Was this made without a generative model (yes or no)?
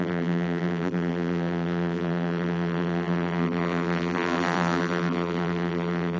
no